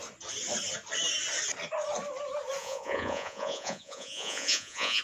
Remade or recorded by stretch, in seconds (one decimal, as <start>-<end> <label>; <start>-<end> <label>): 0.0-2.6 recorded; 2.6-5.0 remade